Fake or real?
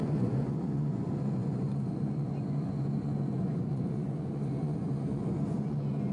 fake